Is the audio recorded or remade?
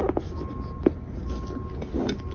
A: recorded